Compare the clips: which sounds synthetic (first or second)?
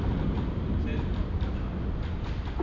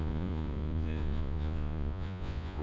second